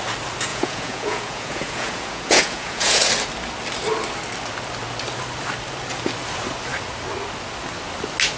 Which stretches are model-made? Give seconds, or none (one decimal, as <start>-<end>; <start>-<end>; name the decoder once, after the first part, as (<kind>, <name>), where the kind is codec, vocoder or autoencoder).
0.5-3.1 (vocoder, Vocos)